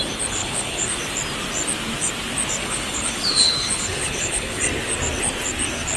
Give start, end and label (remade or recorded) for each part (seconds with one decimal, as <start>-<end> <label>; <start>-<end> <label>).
0.0-0.4 recorded; 0.4-1.0 remade; 1.0-2.6 recorded; 2.6-4.6 remade; 4.6-6.0 recorded